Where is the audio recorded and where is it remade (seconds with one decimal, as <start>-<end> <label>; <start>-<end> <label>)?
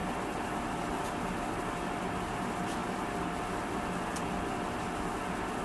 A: 0.0-5.6 recorded